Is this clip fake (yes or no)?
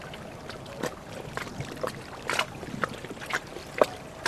no